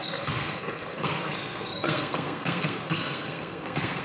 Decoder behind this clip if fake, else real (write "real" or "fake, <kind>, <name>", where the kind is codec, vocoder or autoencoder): fake, codec, SNAC